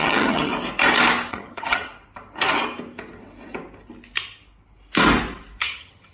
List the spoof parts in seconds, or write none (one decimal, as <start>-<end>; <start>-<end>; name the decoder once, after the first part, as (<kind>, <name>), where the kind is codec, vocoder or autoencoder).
0.0-0.5 (vocoder, HiFi-GAN); 1.3-1.9; 5.6-6.1